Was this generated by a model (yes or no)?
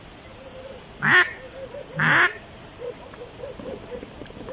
no